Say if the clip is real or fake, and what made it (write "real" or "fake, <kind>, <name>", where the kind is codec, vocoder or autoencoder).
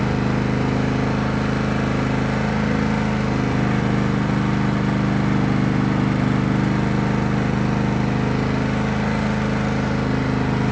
real